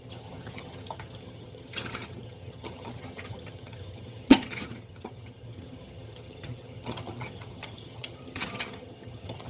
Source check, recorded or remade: remade